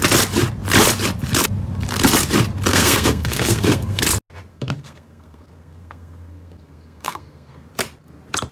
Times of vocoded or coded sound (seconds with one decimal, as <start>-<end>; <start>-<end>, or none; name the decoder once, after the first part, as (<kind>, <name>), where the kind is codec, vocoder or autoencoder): 2.7-4.0 (codec, SNAC); 4.5-7.7